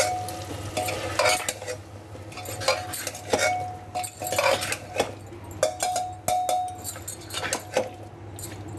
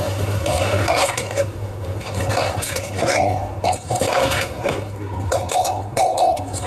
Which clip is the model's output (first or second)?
second